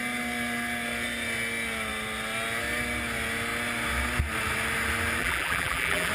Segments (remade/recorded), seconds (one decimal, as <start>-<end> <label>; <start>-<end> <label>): 0.0-5.2 recorded; 5.2-6.1 remade

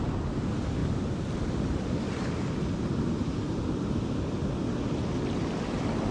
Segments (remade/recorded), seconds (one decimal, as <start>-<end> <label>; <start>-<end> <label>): 0.0-0.8 recorded; 0.8-4.5 remade; 4.5-6.1 recorded

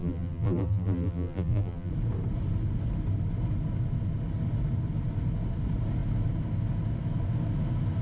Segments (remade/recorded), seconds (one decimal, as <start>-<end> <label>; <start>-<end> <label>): 0.0-1.9 remade; 1.9-8.0 recorded

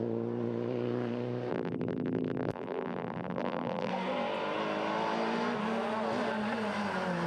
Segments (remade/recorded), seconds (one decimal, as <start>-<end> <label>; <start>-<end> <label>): 0.0-1.5 recorded; 1.5-3.9 remade; 3.9-7.3 recorded

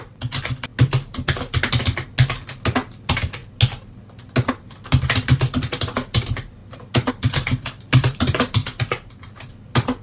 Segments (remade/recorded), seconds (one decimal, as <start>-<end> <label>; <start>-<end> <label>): 0.0-0.7 remade; 0.7-2.9 recorded; 2.9-3.4 remade; 3.4-4.5 recorded; 4.5-6.6 remade; 6.6-7.1 recorded; 7.1-10.0 remade

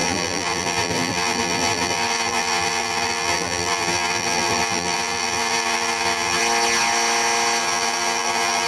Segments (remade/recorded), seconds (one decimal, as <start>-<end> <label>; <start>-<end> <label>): 0.0-6.4 remade; 6.4-7.6 recorded; 7.6-8.7 remade